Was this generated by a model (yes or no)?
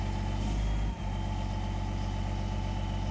no